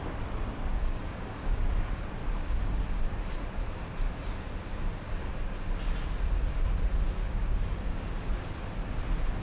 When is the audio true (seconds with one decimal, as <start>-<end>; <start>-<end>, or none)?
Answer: 0.0-0.7; 1.7-2.2; 2.8-7.2; 8.4-9.4